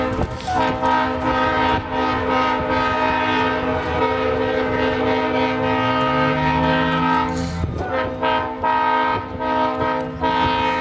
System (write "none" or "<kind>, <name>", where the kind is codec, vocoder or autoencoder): none